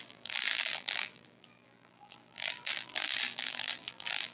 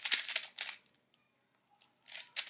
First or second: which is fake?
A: first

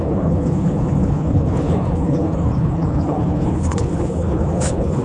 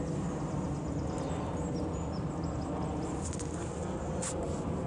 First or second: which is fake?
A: first